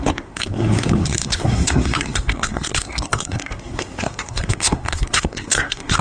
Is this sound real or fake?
fake